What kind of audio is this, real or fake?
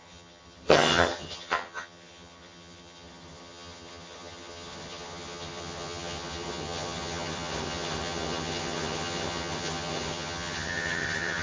fake